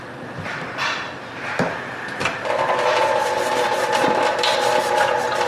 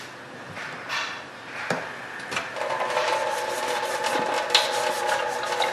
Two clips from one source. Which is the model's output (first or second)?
first